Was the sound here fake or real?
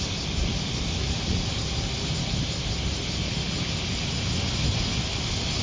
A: real